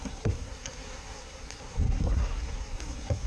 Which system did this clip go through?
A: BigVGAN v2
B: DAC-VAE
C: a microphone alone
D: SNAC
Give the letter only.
D